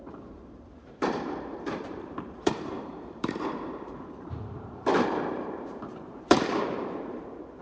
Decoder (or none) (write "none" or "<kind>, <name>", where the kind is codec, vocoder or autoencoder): vocoder, BigVGAN v2